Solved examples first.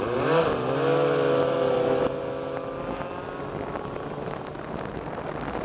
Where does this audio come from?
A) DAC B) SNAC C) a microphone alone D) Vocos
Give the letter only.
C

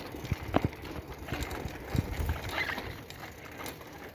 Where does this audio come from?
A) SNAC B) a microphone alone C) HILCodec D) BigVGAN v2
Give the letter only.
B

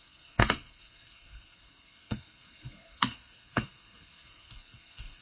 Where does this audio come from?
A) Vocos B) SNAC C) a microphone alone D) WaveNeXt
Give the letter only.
B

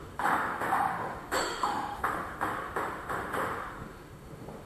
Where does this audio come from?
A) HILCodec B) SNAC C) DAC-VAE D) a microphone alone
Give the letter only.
C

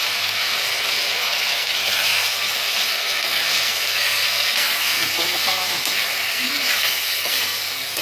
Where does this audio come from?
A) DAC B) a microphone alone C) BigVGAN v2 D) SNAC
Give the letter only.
D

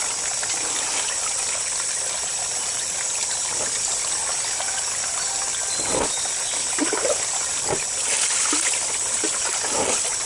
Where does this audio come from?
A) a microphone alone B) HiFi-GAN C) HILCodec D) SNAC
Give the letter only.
A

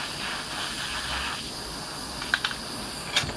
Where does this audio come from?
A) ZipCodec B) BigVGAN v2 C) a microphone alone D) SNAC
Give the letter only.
C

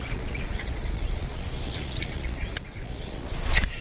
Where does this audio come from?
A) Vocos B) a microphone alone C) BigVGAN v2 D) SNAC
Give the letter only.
A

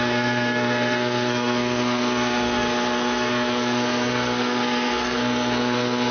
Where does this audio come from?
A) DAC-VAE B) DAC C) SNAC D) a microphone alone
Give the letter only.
C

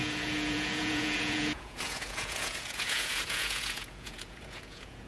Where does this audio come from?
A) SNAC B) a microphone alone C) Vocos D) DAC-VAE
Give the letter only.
C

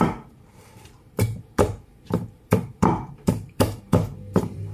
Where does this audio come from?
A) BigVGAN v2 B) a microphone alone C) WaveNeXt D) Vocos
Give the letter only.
A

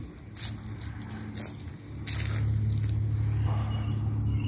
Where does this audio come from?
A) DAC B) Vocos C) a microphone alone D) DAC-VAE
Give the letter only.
C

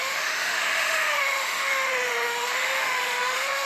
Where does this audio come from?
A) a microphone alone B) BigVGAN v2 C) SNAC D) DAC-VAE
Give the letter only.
D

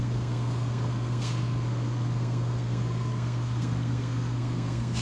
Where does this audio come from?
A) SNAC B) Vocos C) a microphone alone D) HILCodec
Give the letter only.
A